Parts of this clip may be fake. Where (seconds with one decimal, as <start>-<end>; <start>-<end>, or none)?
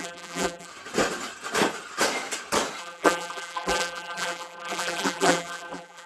0.0-0.7; 2.8-6.1